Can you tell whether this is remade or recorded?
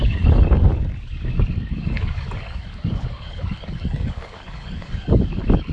remade